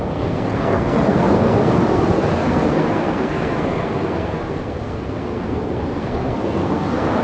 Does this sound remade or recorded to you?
remade